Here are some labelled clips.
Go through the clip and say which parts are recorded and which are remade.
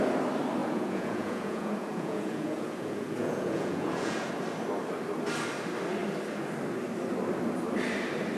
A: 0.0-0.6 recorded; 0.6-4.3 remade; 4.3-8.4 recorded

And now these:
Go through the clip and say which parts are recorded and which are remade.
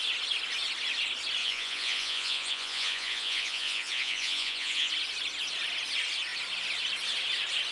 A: 0.0-1.4 recorded; 1.4-4.9 remade; 4.9-7.7 recorded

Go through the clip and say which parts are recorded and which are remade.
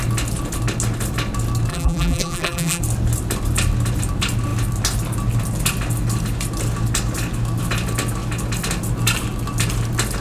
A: 0.0-1.7 recorded; 1.7-2.8 remade; 2.8-10.2 recorded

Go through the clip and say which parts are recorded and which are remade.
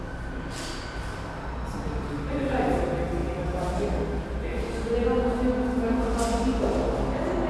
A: 0.0-7.5 recorded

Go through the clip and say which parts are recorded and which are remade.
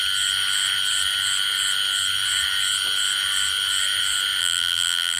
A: 0.0-4.4 recorded; 4.4-5.2 remade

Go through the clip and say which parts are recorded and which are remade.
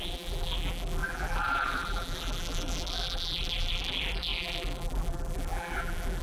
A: 0.0-6.2 remade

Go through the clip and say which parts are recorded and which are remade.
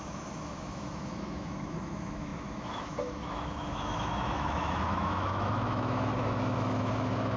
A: 0.0-7.4 remade